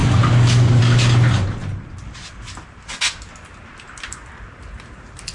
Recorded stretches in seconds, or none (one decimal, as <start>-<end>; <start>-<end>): 0.8-5.3

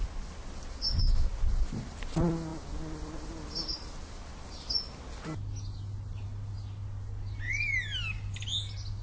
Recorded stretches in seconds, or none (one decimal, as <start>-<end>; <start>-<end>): 0.0-9.0